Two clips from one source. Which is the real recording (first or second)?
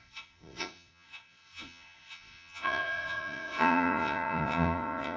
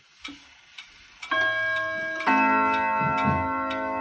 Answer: second